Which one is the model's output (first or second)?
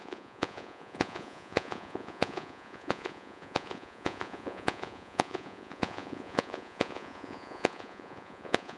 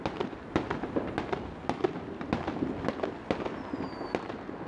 first